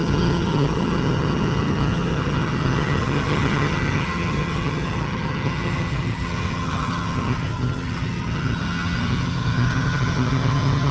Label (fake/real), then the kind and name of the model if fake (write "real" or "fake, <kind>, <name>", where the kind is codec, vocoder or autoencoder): fake, vocoder, HiFi-GAN